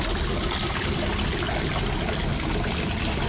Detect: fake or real real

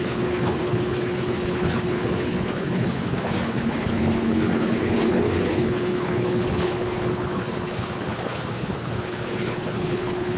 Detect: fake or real fake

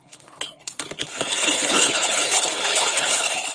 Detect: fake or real fake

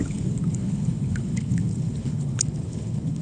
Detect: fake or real fake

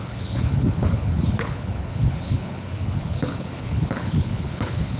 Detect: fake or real fake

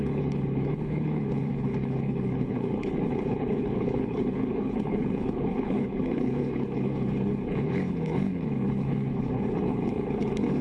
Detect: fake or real fake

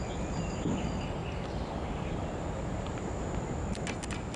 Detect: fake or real real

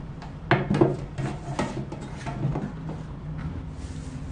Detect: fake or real real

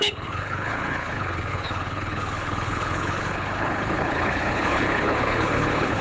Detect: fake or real fake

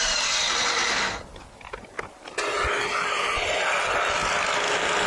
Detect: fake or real real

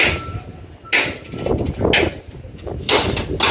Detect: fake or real real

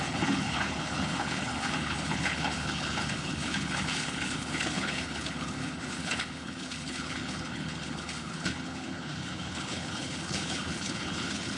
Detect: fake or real fake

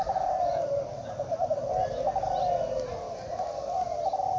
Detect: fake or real real